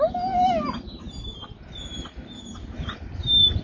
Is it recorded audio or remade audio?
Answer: recorded